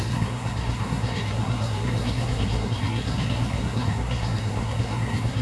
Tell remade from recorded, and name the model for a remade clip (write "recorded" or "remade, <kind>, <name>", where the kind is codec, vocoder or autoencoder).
remade, codec, SNAC